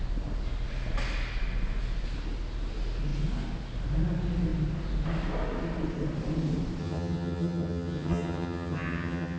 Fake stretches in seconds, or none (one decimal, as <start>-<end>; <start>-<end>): 6.8-9.4